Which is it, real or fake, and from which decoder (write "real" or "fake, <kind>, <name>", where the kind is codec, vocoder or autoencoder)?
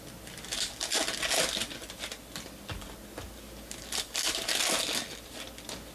real